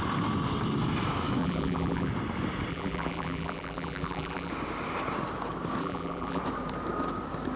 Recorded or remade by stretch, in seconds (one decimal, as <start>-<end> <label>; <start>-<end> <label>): 0.0-1.4 recorded; 1.4-2.1 remade; 2.1-2.7 recorded; 2.7-4.5 remade; 4.5-5.8 recorded; 5.8-6.4 remade; 6.4-7.6 recorded